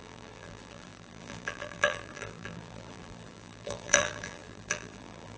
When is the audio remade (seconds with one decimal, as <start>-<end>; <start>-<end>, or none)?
0.0-5.4